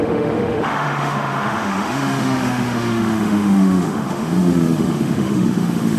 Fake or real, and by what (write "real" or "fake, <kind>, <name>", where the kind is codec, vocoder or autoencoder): fake, autoencoder, DAC-VAE